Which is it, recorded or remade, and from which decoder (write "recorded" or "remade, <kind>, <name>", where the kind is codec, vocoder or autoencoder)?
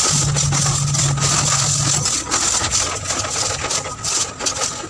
recorded